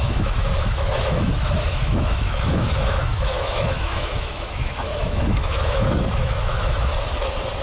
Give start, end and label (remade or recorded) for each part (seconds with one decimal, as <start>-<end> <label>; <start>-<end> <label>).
0.0-6.9 remade; 6.9-7.6 recorded